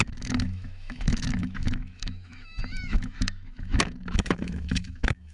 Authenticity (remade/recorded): remade